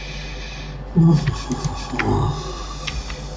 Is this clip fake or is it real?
real